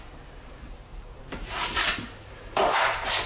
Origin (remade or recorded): remade